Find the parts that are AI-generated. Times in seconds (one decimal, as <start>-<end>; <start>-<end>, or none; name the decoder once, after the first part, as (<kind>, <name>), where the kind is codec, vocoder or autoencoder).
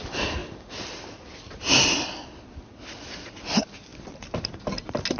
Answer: none